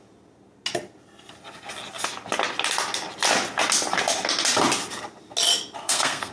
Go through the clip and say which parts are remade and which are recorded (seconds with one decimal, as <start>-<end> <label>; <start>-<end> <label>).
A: 0.0-5.8 recorded; 5.8-6.3 remade